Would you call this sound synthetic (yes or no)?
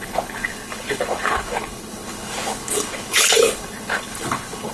yes